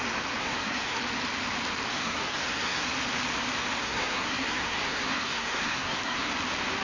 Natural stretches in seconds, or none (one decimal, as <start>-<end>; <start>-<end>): 0.0-0.4; 1.0-1.9; 2.9-3.8; 6.3-6.8